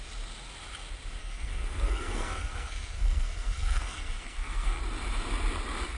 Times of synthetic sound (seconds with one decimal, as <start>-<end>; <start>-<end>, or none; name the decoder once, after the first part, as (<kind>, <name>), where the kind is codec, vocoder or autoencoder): 1.2-4.8 (codec, SNAC)